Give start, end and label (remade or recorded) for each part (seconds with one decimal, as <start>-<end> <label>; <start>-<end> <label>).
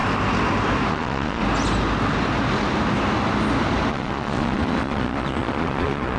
0.0-0.9 recorded; 0.9-1.4 remade; 1.4-3.9 recorded; 3.9-6.2 remade